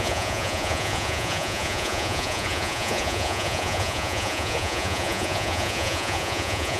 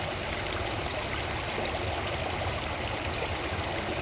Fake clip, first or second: first